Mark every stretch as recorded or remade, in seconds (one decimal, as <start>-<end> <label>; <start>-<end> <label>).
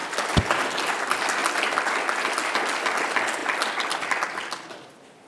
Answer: 0.0-0.7 remade; 0.7-1.4 recorded; 1.4-2.1 remade; 2.1-3.4 recorded; 3.4-4.3 remade; 4.3-5.3 recorded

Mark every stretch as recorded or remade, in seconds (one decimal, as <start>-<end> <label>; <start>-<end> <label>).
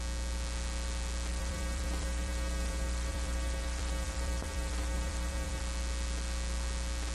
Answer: 0.0-1.3 recorded; 1.3-5.6 remade; 5.6-7.1 recorded